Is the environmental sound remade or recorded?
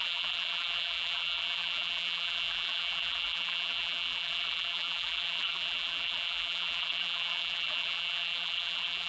remade